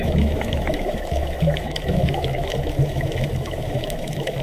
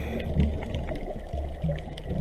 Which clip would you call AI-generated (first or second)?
first